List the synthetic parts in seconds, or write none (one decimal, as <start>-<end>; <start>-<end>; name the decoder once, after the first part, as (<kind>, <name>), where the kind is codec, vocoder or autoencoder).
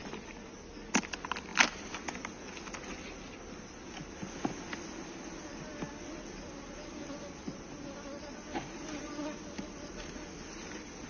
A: none